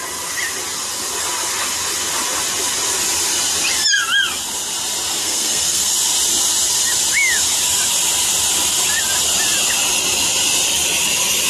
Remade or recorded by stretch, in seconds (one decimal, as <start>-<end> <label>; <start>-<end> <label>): 0.0-5.2 recorded; 5.2-5.9 remade; 5.9-11.5 recorded